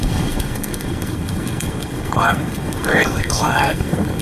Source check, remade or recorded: remade